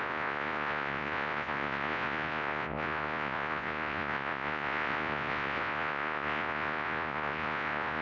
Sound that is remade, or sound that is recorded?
remade